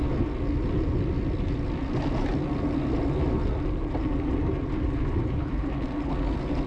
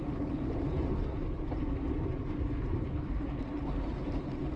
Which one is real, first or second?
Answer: first